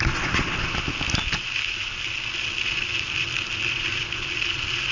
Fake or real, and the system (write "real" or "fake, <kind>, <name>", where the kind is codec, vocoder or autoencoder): real